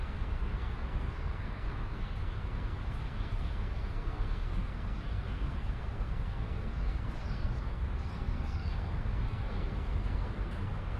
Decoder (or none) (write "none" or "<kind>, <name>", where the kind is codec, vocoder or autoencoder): codec, SNAC